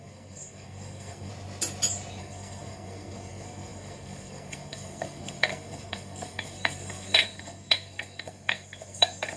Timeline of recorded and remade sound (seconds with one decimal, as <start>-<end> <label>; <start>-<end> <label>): 0.0-1.3 remade; 1.3-2.2 recorded; 2.2-9.4 remade